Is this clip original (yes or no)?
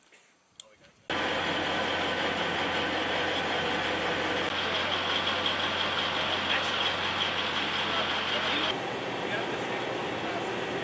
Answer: yes